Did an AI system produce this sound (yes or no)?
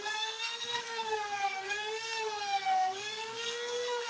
yes